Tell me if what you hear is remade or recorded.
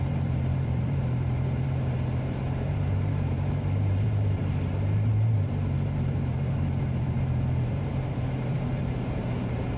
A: remade